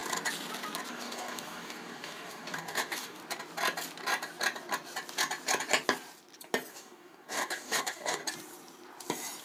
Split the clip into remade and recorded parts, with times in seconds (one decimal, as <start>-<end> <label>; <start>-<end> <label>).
0.0-0.9 recorded; 0.9-3.2 remade; 3.2-6.7 recorded; 6.7-8.2 remade; 8.2-9.4 recorded